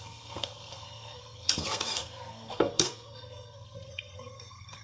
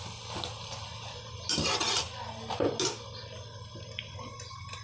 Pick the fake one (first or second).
first